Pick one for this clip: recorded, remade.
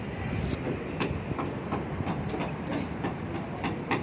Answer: remade